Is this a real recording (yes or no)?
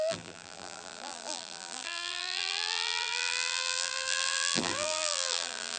no